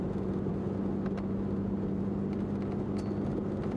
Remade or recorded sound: recorded